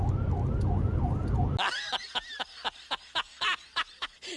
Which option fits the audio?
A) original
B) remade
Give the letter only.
A